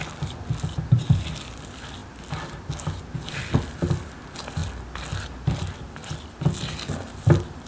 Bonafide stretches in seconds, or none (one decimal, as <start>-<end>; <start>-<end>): 0.0-7.7

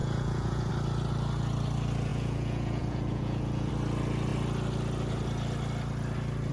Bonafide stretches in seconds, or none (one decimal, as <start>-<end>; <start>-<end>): 0.7-2.1; 3.7-6.5

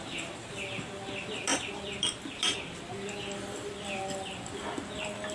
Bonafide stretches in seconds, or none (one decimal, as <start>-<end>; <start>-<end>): 0.0-5.3

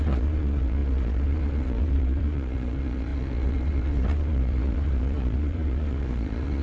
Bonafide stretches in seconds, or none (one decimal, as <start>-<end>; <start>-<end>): none

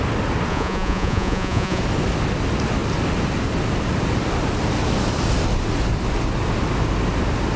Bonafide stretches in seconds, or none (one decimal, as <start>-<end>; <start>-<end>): 0.0-0.5; 1.8-7.6